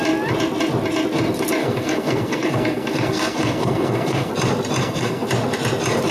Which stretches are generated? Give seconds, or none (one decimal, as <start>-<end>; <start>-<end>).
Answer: 1.6-4.3; 4.8-5.3